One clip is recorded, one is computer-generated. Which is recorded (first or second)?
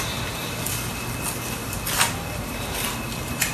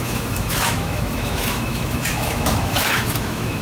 first